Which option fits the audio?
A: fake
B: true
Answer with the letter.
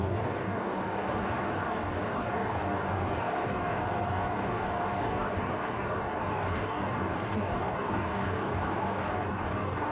A